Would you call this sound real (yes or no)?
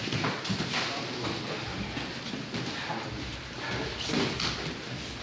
yes